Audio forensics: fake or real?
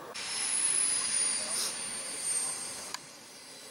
fake